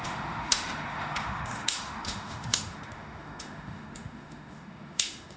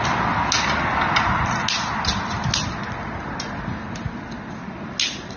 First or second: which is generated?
first